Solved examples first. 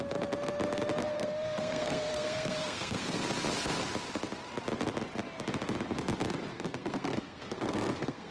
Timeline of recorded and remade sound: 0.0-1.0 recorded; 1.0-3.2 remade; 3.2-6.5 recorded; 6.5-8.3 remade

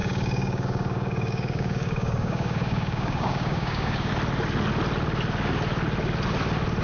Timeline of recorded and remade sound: 0.0-4.1 remade; 4.1-6.8 recorded

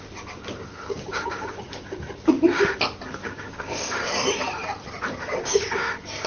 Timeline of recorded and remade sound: 0.0-0.5 recorded; 0.5-1.6 remade; 1.6-3.2 recorded; 3.2-4.0 remade; 4.0-5.2 recorded; 5.2-5.7 remade; 5.7-6.3 recorded

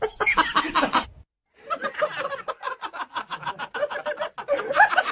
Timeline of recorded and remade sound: 0.0-5.1 recorded

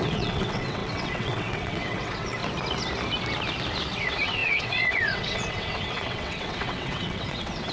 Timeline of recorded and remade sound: 0.0-2.4 remade; 2.4-4.0 recorded; 4.0-7.7 remade

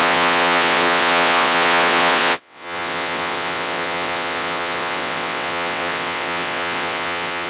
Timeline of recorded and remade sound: 0.0-7.5 remade